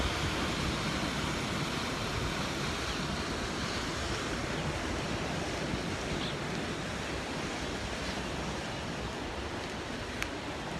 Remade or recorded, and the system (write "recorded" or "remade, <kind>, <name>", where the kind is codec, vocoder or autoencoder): recorded